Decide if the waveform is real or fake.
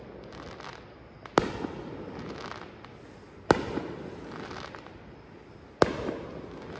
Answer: real